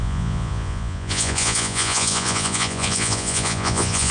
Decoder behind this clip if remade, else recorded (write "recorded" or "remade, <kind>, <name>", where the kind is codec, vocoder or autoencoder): remade, vocoder, Vocos